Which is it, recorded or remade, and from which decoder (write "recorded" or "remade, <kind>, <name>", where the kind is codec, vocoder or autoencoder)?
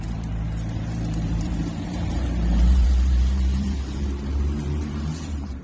remade, vocoder, BigVGAN v2